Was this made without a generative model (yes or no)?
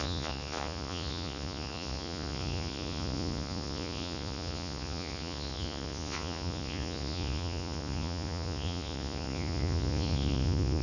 no